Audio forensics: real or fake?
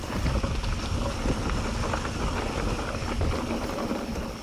real